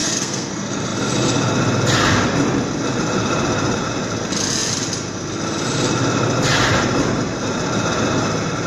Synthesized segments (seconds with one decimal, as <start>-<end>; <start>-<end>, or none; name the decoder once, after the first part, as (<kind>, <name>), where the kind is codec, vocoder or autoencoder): 0.0-0.5 (codec, SNAC)